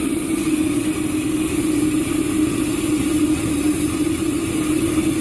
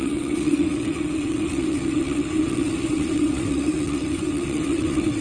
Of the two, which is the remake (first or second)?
second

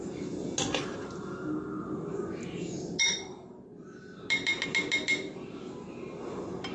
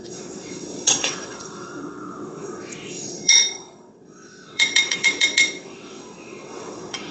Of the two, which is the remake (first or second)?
second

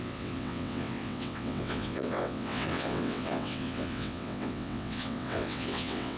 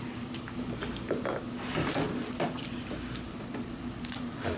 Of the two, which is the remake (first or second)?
first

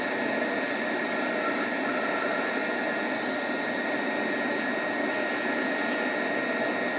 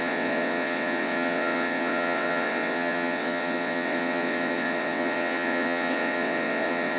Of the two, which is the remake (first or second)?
second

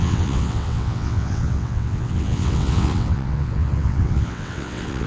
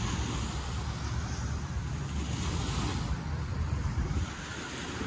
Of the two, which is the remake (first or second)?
first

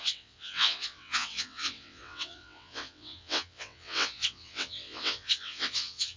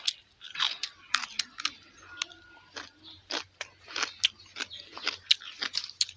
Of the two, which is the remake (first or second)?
first